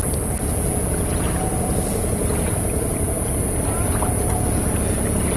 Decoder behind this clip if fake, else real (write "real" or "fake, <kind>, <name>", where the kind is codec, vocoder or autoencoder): real